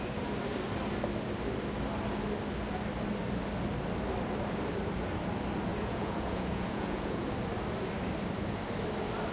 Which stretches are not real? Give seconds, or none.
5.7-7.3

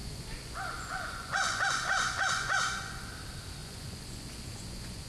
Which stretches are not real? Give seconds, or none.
0.0-3.1; 3.6-5.1

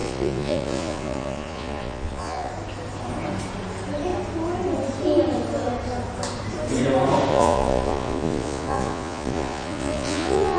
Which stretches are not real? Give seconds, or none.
0.0-2.5; 7.3-10.6